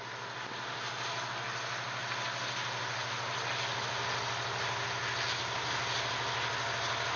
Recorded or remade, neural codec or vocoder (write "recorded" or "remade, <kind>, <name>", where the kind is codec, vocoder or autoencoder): recorded